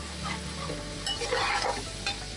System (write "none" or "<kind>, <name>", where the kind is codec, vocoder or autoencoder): none